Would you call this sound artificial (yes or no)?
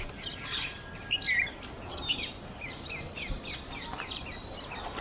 yes